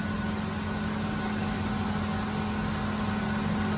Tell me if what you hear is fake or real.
real